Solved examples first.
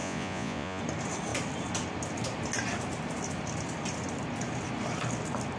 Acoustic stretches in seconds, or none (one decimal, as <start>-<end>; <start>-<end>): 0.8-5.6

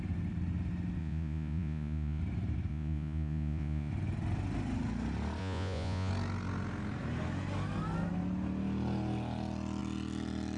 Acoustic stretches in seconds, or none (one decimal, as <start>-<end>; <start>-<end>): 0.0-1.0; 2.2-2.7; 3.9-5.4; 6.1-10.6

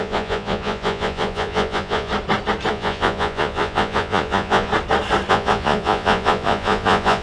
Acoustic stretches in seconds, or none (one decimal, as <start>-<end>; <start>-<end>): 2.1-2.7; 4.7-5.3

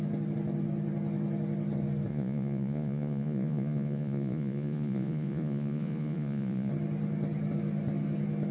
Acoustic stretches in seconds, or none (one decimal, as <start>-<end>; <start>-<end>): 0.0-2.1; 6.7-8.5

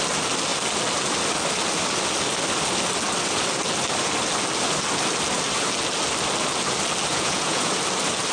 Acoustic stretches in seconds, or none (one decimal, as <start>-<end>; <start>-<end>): 0.0-7.1; 7.7-8.3

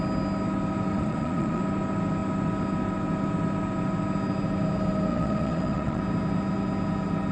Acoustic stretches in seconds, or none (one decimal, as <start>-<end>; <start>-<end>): 0.0-0.9; 1.6-5.1; 6.0-7.3

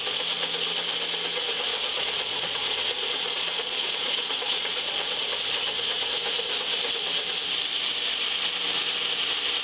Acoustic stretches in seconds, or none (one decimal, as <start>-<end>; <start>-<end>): 0.0-1.7; 5.2-9.6